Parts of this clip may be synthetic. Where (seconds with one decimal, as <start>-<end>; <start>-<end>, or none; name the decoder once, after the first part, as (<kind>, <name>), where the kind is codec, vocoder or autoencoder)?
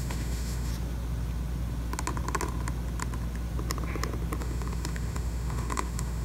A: 0.0-0.7 (autoencoder, DAC-VAE); 4.4-6.2